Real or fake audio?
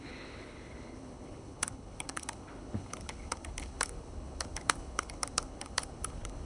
fake